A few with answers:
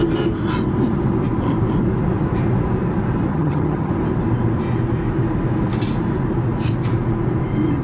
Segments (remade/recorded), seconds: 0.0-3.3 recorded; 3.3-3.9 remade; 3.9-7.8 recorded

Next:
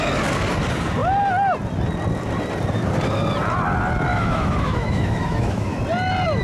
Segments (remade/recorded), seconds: 0.0-4.1 recorded; 4.1-5.8 remade; 5.8-6.4 recorded

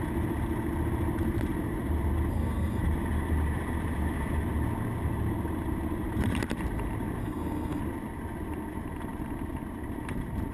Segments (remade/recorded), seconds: 0.0-2.3 recorded; 2.3-2.8 remade; 2.8-7.2 recorded; 7.2-7.8 remade; 7.8-10.5 recorded

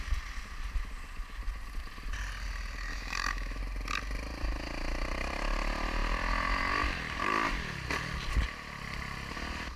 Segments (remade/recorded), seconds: 0.0-2.9 recorded; 2.9-3.6 remade; 3.6-9.8 recorded

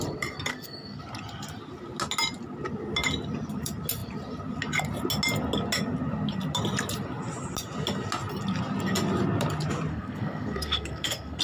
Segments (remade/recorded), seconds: 0.0-0.5 recorded; 0.5-1.0 remade; 1.0-9.9 recorded; 9.9-11.4 remade

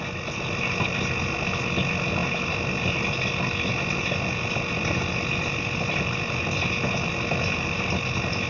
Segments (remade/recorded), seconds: 0.0-8.5 recorded

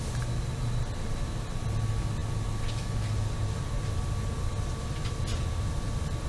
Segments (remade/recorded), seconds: 0.0-6.3 recorded